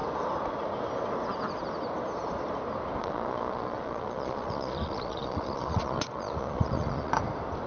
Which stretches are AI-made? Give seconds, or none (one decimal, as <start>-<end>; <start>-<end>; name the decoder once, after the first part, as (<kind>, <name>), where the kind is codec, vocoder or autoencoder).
3.0-7.1 (vocoder, Vocos)